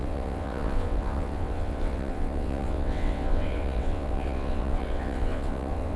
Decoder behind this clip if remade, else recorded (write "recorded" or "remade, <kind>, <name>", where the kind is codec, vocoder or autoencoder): remade, vocoder, WaveNeXt